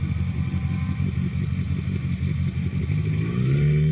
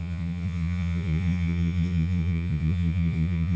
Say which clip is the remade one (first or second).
second